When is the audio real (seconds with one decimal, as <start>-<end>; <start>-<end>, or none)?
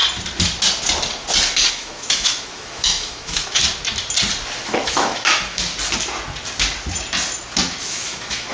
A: 0.0-1.7; 3.6-4.6; 5.7-7.8